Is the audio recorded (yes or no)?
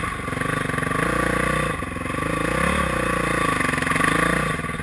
yes